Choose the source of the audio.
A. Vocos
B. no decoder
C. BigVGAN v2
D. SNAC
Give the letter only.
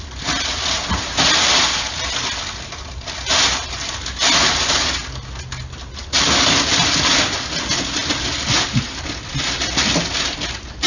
B